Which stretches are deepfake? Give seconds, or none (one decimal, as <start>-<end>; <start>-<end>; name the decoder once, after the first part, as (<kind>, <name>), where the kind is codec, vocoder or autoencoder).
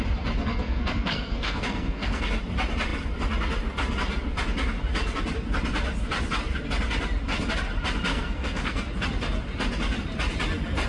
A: 0.4-2.3 (codec, SNAC); 8.1-8.8